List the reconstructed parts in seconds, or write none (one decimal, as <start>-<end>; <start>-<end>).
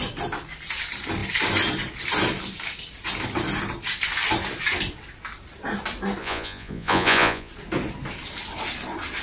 6.2-7.5